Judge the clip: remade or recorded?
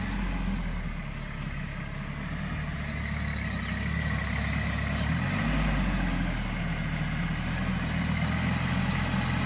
recorded